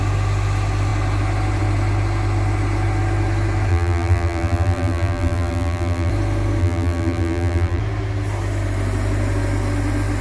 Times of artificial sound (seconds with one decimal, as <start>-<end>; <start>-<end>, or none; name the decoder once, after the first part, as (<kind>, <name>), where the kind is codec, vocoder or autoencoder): 3.7-6.1 (vocoder, BigVGAN v2); 6.6-7.8